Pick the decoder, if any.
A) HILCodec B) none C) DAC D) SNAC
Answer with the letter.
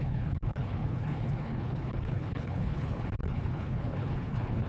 A